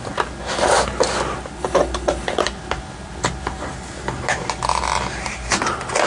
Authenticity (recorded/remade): recorded